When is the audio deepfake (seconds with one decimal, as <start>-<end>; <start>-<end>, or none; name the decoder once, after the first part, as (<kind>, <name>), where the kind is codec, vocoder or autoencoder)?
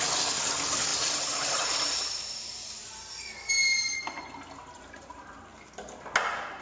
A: 0.9-3.1 (vocoder, BigVGAN v2); 4.6-5.3